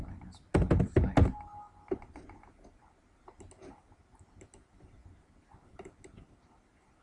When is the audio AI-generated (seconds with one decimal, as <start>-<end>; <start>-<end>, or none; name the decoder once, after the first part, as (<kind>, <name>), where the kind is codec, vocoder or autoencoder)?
none